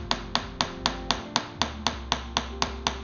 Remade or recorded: recorded